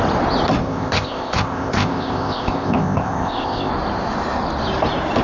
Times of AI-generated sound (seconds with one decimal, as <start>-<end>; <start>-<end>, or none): 0.6-3.7